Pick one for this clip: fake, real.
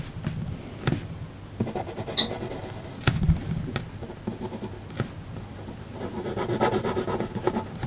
real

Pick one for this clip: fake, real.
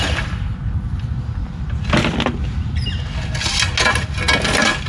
real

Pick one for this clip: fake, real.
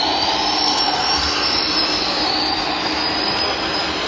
real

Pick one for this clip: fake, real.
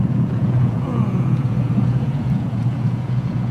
fake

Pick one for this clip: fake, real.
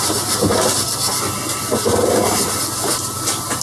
real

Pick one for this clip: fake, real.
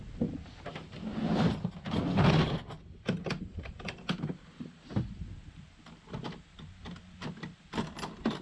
real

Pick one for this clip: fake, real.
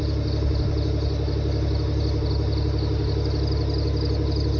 real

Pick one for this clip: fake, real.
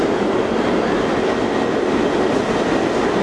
real